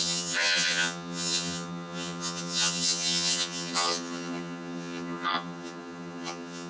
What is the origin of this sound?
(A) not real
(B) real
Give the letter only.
A